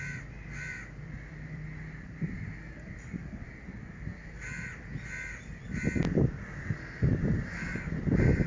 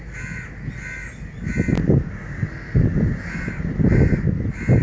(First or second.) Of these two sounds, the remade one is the first